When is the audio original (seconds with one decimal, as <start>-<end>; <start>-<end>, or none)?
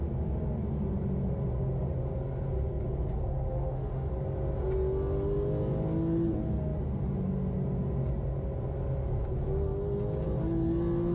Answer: 0.0-3.5; 4.1-11.1